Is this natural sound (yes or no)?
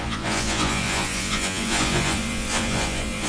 no